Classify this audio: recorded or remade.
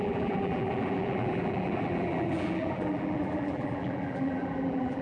remade